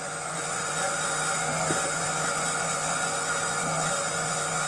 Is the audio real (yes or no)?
no